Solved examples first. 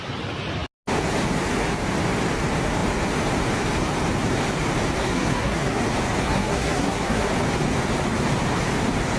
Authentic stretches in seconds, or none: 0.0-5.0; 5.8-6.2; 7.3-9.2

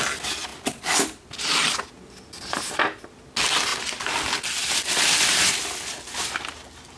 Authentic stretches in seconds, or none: 0.0-7.0

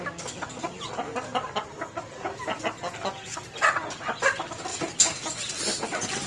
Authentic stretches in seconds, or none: 0.0-6.3

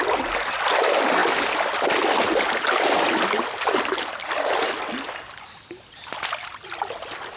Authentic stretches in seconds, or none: 0.0-7.4